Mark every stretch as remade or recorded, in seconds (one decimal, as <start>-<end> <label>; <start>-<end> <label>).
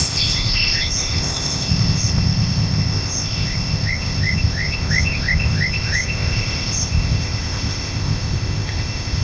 0.0-9.2 remade